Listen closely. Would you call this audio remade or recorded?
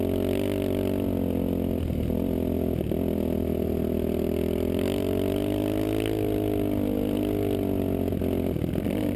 recorded